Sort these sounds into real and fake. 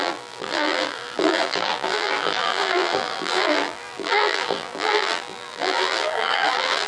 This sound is fake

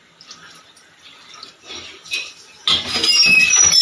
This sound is real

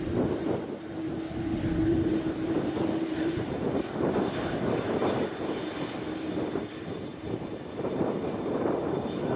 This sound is fake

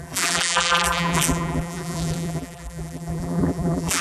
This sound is fake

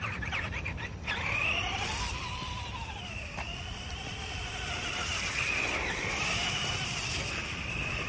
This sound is fake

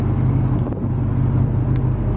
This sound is real